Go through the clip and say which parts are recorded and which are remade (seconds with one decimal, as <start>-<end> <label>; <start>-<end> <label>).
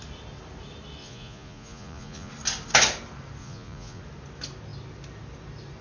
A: 0.0-1.0 recorded; 1.0-2.3 remade; 2.3-3.4 recorded; 3.4-4.0 remade; 4.0-5.8 recorded